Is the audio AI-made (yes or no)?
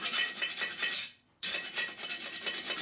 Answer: yes